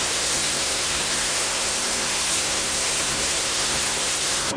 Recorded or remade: remade